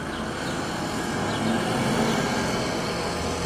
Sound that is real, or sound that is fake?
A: real